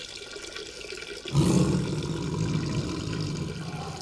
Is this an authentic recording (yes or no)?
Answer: yes